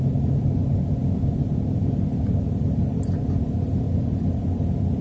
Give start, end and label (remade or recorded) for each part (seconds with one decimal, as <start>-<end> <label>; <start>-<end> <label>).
0.0-0.6 remade; 0.6-1.9 recorded; 1.9-3.2 remade; 3.2-5.0 recorded